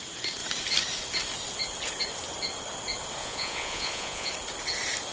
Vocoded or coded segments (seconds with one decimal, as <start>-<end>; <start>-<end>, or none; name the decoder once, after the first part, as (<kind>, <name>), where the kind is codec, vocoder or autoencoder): 3.2-4.3 (vocoder, Vocos)